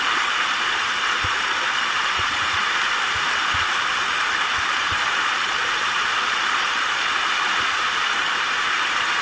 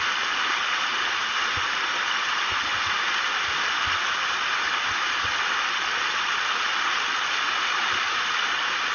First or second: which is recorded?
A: second